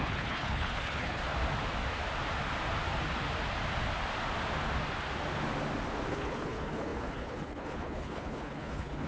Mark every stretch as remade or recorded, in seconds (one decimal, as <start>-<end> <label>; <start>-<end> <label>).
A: 0.0-1.2 remade; 1.2-6.1 recorded; 6.1-9.1 remade